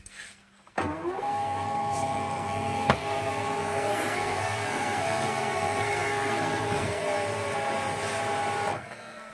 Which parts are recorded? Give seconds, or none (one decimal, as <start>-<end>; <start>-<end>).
7.0-8.7